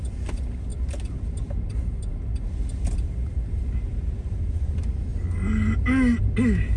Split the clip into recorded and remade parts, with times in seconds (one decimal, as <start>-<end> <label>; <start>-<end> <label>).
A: 0.0-0.7 remade; 0.7-1.6 recorded; 1.6-2.1 remade; 2.1-2.8 recorded; 2.8-5.1 remade; 5.1-6.8 recorded